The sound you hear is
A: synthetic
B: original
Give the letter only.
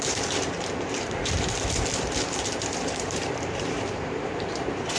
A